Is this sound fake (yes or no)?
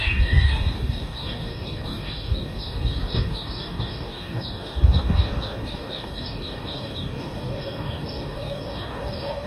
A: yes